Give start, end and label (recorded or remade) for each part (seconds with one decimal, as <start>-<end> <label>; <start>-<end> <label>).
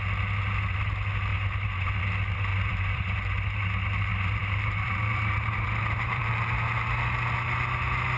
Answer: 0.0-1.3 recorded; 1.3-2.0 remade; 2.0-2.5 recorded; 2.5-3.2 remade; 3.2-4.1 recorded; 4.1-6.3 remade; 6.3-8.2 recorded